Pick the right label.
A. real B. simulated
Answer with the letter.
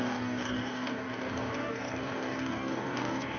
B